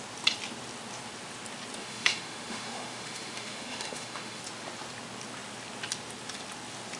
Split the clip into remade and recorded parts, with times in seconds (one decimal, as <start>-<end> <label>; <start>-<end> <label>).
0.0-1.8 recorded; 1.8-4.4 remade; 4.4-7.0 recorded

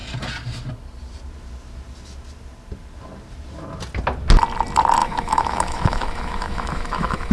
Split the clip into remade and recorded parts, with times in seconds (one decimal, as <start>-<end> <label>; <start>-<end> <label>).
0.0-5.0 recorded; 5.0-7.3 remade

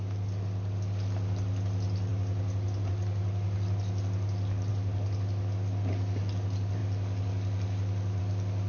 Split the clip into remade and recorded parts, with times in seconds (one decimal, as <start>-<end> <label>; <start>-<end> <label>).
0.0-8.7 recorded

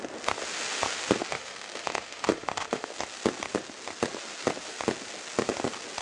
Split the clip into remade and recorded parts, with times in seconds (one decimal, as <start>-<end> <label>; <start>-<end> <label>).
0.0-1.3 recorded; 1.3-2.9 remade; 2.9-6.0 recorded

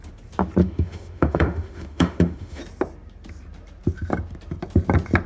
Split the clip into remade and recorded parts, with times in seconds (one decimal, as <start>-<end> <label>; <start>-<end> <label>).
0.0-0.6 recorded; 0.6-2.6 remade; 2.6-5.3 recorded

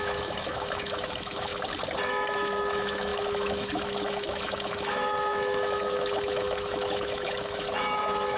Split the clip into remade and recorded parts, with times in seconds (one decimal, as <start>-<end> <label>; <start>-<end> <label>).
0.0-1.5 remade; 1.5-2.1 recorded; 2.1-8.4 remade

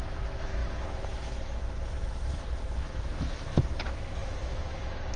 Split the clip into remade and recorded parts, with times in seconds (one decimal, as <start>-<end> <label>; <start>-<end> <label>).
0.0-5.2 remade

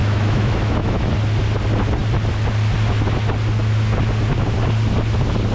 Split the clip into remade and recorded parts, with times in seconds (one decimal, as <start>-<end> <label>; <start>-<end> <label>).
0.0-1.1 remade; 1.1-5.5 recorded